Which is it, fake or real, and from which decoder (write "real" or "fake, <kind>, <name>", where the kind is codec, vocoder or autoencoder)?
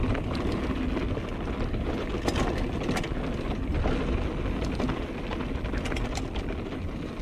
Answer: real